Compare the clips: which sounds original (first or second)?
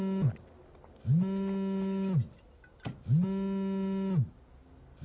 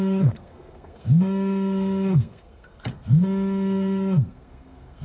first